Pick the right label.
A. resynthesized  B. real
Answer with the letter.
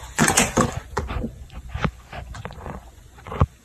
A